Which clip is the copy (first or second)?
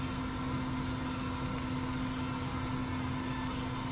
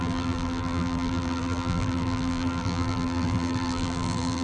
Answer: second